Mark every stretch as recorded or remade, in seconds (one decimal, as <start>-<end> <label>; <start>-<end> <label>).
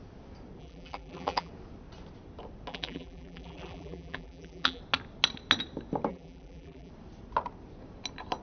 0.0-0.6 recorded; 0.6-1.5 remade; 1.5-2.7 recorded; 2.7-4.8 remade; 4.8-6.1 recorded; 6.1-6.9 remade; 6.9-8.4 recorded